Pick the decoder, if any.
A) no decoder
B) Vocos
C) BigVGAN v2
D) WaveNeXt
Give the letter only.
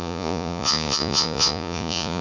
B